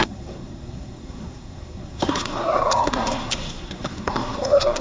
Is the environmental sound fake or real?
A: fake